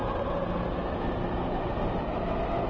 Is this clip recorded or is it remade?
recorded